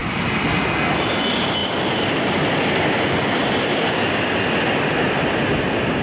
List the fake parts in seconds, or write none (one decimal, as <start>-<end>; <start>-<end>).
none